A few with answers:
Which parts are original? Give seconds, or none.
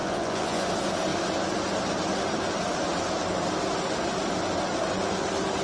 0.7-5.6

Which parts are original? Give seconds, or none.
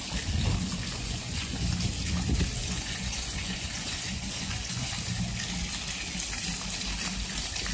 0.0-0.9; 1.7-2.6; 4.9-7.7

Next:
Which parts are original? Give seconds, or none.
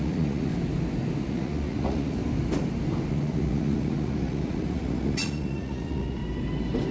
0.5-1.2; 2.2-3.1; 6.2-6.9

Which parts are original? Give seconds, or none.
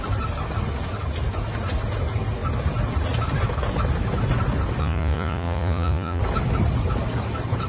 0.0-4.8; 6.2-7.7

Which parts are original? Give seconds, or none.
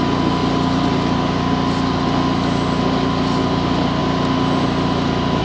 0.0-5.4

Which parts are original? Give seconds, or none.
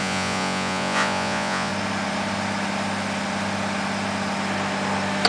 1.7-5.3